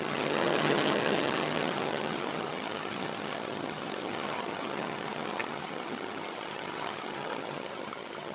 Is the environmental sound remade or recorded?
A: remade